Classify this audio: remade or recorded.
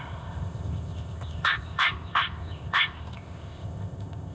remade